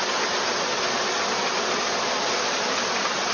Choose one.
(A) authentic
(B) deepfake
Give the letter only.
A